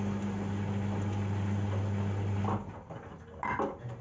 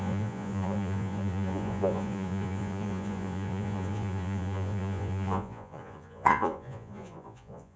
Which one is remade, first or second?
second